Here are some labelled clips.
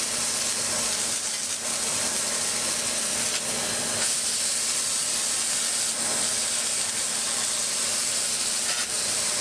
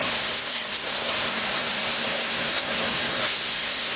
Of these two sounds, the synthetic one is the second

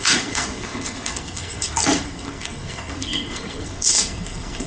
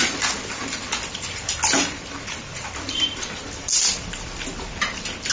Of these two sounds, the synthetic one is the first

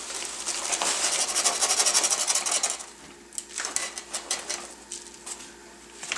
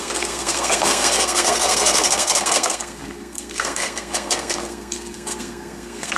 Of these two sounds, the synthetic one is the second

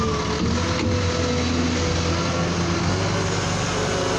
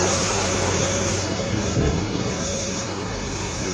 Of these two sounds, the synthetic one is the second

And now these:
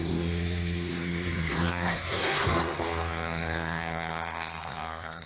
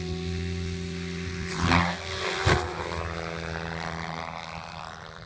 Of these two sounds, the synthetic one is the first